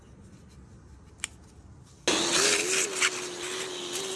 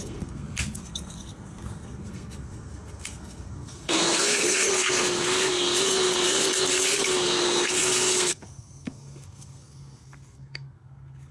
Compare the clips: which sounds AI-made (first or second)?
second